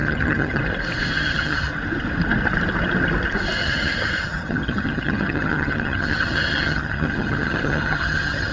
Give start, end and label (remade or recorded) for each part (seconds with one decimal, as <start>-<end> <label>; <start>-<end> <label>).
0.0-0.6 remade; 0.6-1.1 recorded; 1.1-1.7 remade; 1.7-3.6 recorded; 3.6-8.5 remade